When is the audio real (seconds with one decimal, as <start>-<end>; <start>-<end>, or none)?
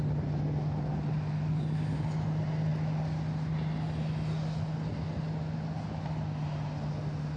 0.0-7.4